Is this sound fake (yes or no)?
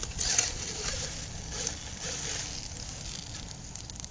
no